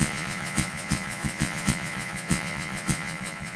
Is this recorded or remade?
remade